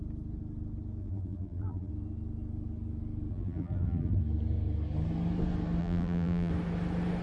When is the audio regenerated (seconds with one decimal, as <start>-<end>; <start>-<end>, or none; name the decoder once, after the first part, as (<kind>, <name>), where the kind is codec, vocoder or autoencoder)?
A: 1.0-1.9 (vocoder, BigVGAN v2); 3.3-4.2; 5.8-6.5